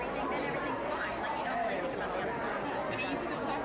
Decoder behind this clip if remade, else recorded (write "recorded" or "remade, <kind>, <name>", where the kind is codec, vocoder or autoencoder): recorded